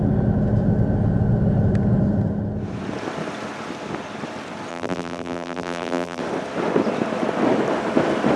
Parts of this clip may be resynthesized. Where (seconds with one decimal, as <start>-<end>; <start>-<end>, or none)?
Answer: 4.7-6.2